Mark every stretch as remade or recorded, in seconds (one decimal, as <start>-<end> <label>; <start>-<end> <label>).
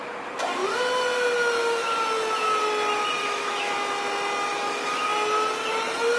0.0-3.2 recorded; 3.2-3.7 remade; 3.7-4.5 recorded; 4.5-5.0 remade; 5.0-6.2 recorded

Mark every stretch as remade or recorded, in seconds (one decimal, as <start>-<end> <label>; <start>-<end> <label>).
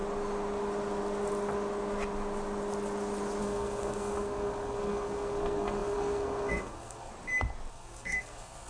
0.0-3.4 recorded; 3.4-7.1 remade; 7.1-7.7 recorded; 7.7-8.7 remade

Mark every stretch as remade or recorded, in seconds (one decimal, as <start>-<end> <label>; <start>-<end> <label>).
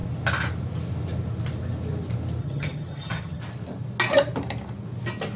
0.0-2.4 recorded; 2.4-3.4 remade; 3.4-5.4 recorded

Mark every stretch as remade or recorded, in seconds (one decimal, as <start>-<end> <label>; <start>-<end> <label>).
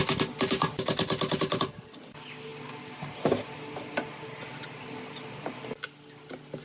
0.0-6.6 recorded